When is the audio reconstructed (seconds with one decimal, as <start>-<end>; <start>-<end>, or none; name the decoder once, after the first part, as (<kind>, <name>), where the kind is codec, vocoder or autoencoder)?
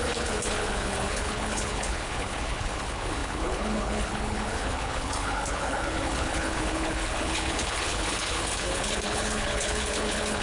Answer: 0.0-10.4 (codec, HILCodec)